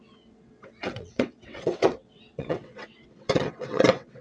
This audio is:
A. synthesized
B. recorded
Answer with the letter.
A